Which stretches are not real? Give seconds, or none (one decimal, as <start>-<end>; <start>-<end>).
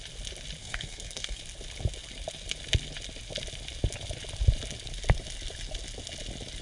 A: 0.6-1.4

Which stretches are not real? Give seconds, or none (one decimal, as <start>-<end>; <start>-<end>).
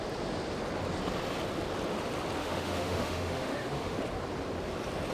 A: 2.4-4.0